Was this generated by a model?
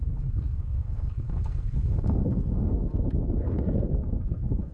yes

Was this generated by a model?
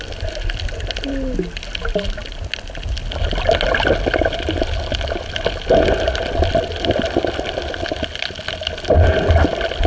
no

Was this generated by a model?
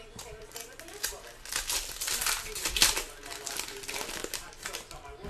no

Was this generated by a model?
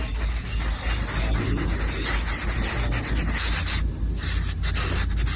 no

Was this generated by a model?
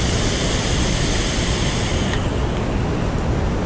no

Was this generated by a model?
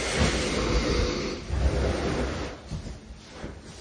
no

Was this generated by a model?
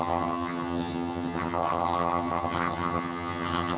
yes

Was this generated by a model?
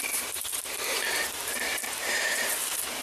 yes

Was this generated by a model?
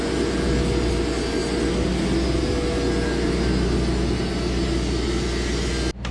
no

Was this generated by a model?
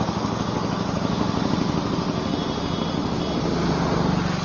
no